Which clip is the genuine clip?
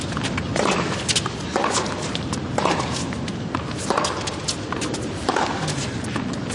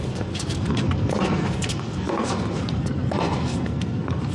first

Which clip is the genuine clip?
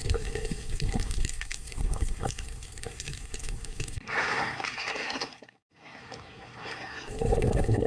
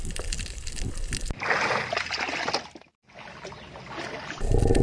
second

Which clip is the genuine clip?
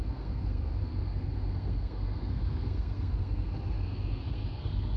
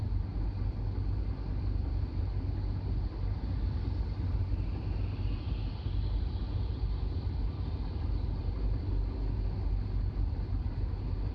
second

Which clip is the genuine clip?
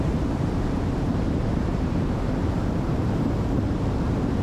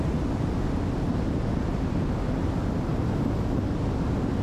second